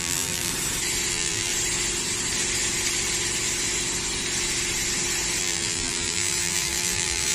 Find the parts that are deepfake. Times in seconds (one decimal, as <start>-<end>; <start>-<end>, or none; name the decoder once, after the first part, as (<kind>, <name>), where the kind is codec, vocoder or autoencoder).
0.0-0.5 (vocoder, BigVGAN v2); 1.1-1.5; 5.4-7.3